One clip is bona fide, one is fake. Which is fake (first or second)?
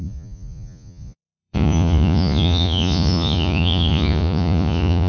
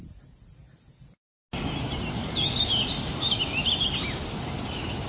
first